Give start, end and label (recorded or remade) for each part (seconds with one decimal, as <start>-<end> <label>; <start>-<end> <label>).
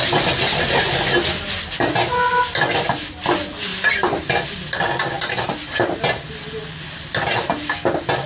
0.0-8.3 recorded